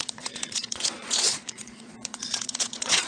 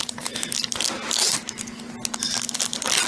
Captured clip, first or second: second